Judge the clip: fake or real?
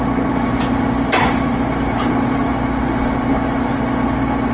real